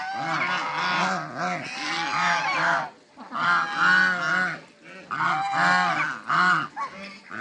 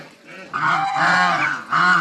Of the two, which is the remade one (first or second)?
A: second